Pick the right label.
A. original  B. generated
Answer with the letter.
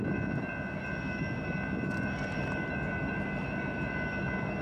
A